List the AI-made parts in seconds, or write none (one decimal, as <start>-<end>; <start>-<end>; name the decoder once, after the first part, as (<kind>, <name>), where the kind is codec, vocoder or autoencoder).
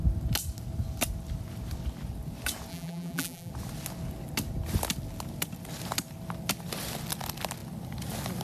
2.7-3.5 (vocoder, BigVGAN v2)